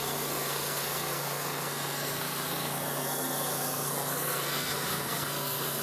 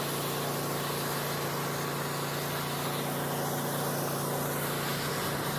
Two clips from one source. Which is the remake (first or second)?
first